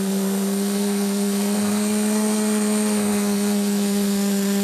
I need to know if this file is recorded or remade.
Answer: remade